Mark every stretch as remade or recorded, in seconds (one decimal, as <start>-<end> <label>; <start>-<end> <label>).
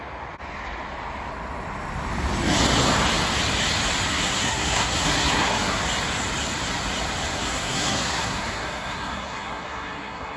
0.0-4.1 recorded; 4.1-5.8 remade; 5.8-7.3 recorded; 7.3-10.4 remade